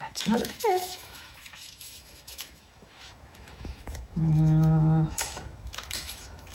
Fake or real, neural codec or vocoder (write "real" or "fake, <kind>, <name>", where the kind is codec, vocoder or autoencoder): fake, autoencoder, DAC-VAE